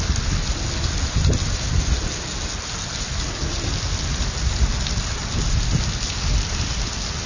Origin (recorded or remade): recorded